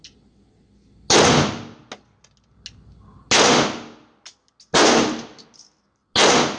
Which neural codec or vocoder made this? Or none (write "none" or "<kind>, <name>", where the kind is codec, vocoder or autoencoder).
none